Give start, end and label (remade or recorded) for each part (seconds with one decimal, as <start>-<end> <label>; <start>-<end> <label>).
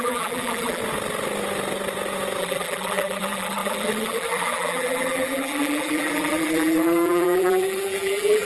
0.0-0.8 remade; 0.8-2.4 recorded; 2.4-8.5 remade